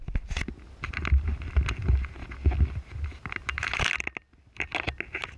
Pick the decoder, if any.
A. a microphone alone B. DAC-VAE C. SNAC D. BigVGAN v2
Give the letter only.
A